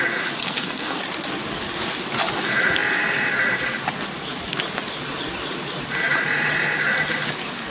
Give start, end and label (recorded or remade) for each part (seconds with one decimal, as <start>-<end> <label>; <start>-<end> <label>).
0.0-0.4 recorded; 0.4-1.0 remade; 1.0-7.7 recorded